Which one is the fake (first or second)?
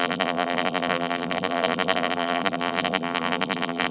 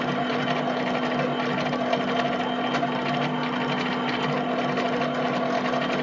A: first